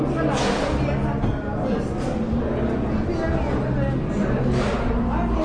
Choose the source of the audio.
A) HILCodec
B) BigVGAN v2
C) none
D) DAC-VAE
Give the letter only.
C